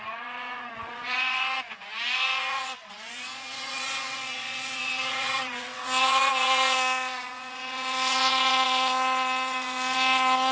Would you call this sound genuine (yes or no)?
no